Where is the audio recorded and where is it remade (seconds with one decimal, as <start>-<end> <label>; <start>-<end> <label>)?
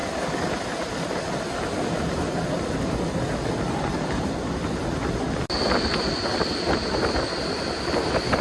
0.0-8.4 recorded